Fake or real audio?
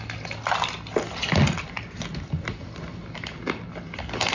real